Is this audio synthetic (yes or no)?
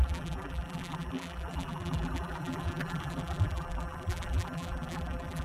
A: yes